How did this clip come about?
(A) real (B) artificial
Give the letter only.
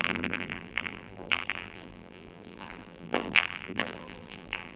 B